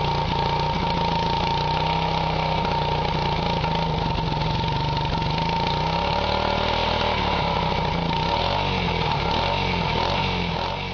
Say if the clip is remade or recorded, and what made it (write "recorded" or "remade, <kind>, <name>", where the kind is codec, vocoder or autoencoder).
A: recorded